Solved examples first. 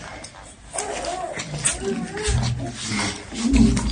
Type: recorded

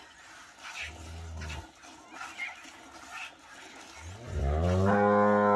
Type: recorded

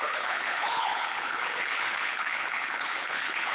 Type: remade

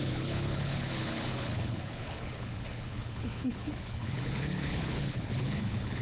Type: remade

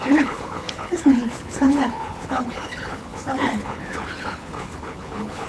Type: remade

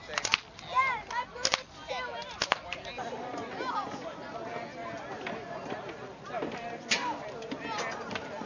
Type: recorded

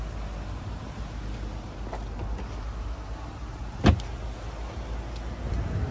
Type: recorded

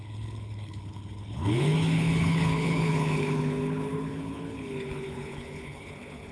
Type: remade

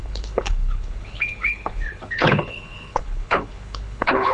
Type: remade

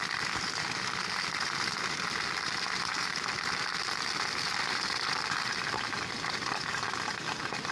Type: recorded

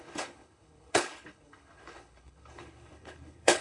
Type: remade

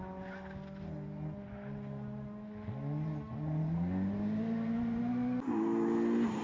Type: recorded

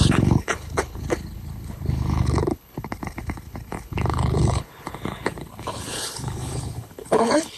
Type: remade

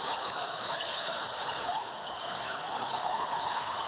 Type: remade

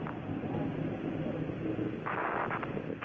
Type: recorded